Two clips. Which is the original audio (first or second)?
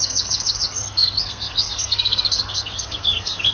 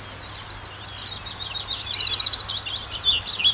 second